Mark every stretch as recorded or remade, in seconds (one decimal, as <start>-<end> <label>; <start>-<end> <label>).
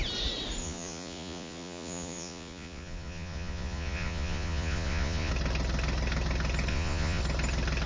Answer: 0.0-0.6 recorded; 0.6-5.3 remade; 5.3-6.7 recorded; 6.7-7.2 remade; 7.2-7.9 recorded